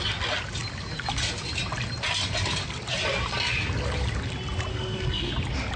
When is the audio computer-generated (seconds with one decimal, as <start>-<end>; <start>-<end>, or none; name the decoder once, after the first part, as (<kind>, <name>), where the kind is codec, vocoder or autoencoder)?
4.7-5.3 (codec, SNAC)